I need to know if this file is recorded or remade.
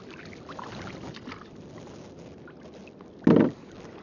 recorded